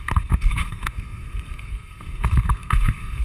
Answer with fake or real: fake